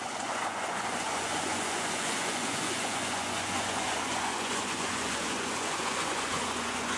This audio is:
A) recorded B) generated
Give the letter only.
B